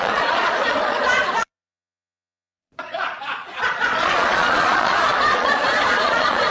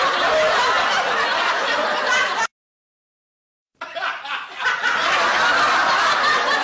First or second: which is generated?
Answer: first